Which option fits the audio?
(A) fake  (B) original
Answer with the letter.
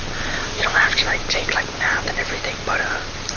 B